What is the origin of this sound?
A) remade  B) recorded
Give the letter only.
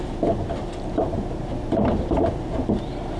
B